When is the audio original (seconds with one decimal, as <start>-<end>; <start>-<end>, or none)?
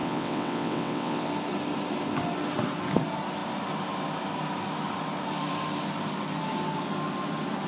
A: 1.3-7.7